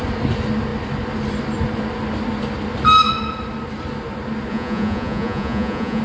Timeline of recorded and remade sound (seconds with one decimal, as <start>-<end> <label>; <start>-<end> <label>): 0.0-4.5 recorded; 4.5-6.0 remade